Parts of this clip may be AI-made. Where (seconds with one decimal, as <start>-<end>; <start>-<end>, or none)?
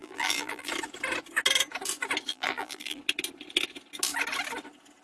0.0-0.7; 2.3-3.0